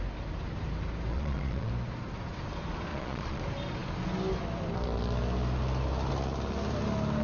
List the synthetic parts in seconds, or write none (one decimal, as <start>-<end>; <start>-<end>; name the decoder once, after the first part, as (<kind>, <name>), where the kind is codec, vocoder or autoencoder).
1.1-1.7 (vocoder, Vocos); 2.9-3.4